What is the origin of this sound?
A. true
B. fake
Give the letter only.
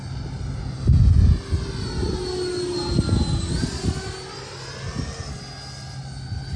A